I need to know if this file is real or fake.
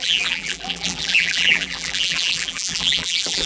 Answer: fake